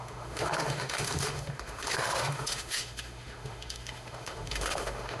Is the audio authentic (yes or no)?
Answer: no